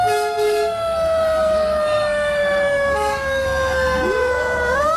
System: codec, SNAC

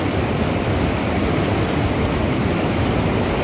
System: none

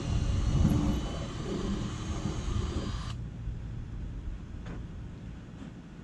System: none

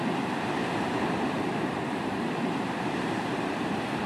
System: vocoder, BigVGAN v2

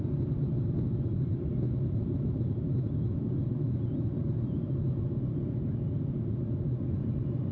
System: none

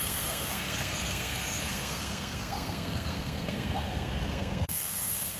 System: codec, SNAC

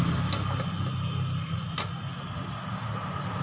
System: none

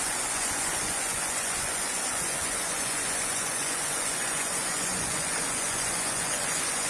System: vocoder, Vocos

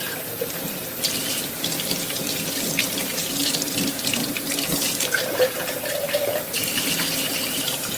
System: vocoder, BigVGAN v2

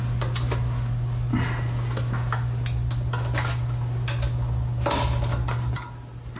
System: none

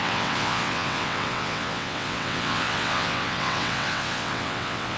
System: vocoder, WaveNeXt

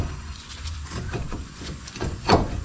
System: vocoder, Vocos